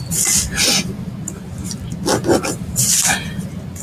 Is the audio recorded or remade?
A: recorded